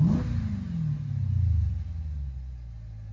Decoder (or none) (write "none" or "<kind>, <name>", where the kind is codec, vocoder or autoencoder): none